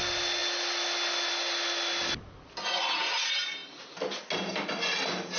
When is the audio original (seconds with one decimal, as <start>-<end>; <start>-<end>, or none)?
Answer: 0.0-5.4